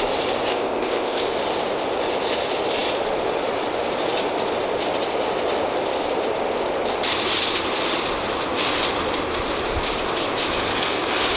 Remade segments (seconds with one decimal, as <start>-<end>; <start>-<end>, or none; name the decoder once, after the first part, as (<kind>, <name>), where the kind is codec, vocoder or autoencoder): 0.5-1.2 (codec, ZipCodec)